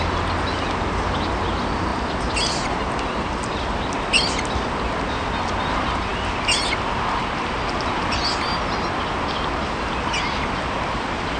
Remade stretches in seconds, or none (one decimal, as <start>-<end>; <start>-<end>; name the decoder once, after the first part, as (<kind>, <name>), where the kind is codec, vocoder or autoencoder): none